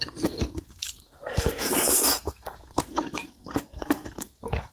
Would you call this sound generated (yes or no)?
yes